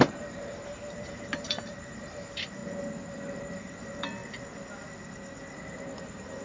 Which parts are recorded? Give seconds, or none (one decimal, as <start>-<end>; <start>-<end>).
2.6-3.1; 4.2-6.0